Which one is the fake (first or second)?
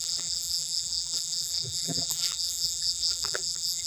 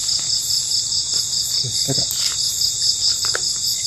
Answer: first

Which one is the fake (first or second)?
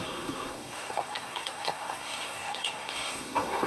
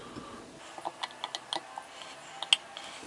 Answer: first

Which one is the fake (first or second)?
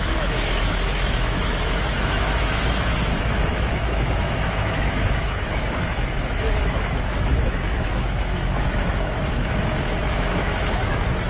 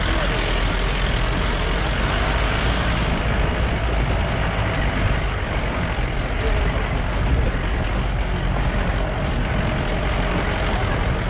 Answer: first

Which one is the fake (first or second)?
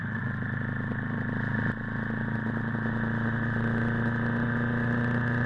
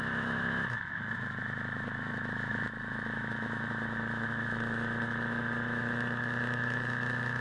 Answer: second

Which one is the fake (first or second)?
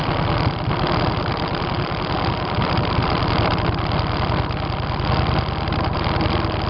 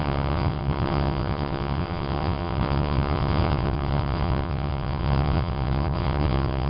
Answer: second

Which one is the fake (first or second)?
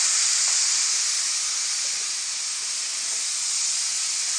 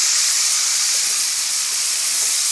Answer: second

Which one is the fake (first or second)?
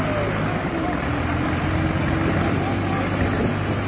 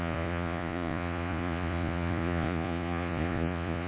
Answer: second